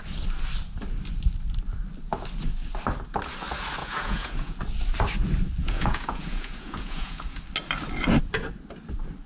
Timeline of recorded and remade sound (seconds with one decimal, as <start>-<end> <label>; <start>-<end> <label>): 0.0-3.8 recorded; 3.8-4.6 remade; 4.6-5.6 recorded; 5.6-7.4 remade; 7.4-9.3 recorded